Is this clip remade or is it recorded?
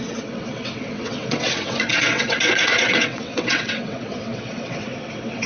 remade